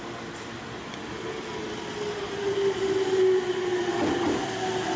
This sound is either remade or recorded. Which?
recorded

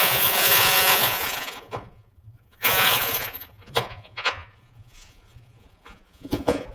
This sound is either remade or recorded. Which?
remade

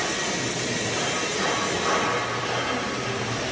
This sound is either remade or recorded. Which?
recorded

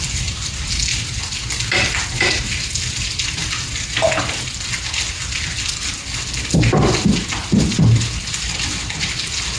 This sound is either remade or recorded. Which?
recorded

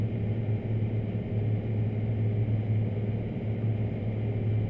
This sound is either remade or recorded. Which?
recorded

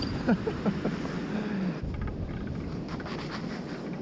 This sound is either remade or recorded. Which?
recorded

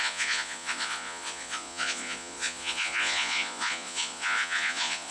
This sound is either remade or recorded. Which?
remade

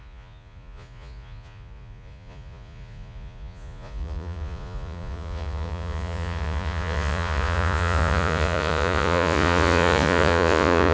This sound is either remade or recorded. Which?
remade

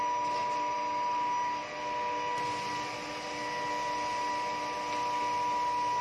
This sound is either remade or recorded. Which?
recorded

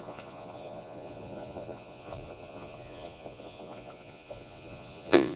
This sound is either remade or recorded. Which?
remade